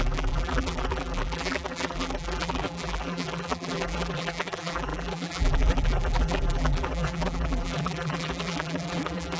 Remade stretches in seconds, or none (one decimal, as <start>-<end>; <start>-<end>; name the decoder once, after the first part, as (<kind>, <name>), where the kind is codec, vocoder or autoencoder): 0.0-9.4 (vocoder, BigVGAN v2)